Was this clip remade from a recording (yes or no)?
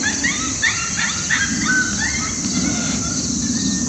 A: no